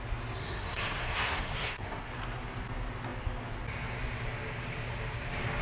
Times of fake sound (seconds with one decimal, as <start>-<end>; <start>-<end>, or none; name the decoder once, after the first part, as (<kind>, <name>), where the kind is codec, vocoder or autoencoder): 0.4-2.1 (codec, SNAC)